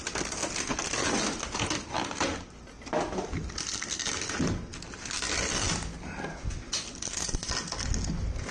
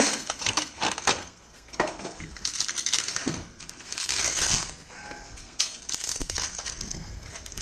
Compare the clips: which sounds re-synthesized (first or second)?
second